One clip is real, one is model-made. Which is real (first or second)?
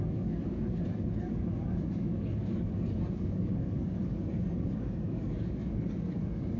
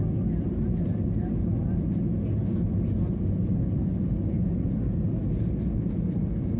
second